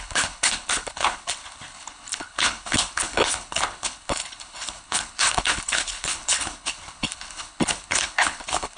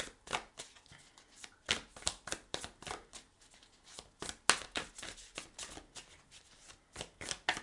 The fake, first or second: first